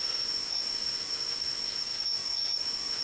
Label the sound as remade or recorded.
remade